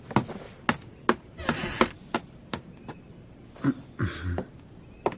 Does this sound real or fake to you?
real